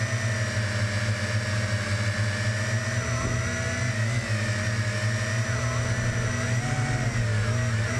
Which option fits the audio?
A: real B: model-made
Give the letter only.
A